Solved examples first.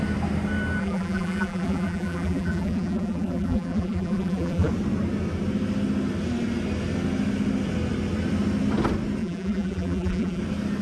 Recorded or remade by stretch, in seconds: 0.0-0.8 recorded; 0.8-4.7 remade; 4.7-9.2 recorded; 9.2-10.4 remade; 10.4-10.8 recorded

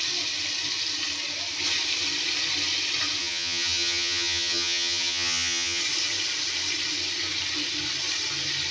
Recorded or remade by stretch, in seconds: 0.0-3.2 recorded; 3.2-5.8 remade; 5.8-8.7 recorded

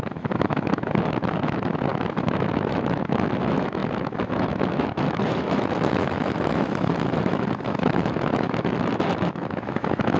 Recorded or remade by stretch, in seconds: 0.0-10.2 remade

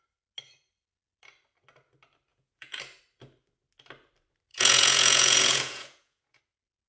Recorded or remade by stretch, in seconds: 0.0-2.3 recorded; 2.3-2.8 remade; 2.8-4.5 recorded; 4.5-6.4 remade; 6.4-6.9 recorded

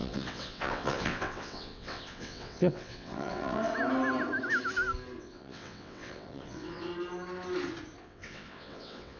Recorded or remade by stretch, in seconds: 0.0-3.7 remade; 3.7-5.2 recorded; 5.2-6.9 remade; 6.9-8.0 recorded; 8.0-9.2 remade